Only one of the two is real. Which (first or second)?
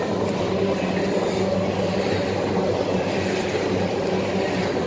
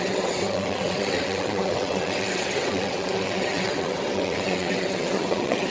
first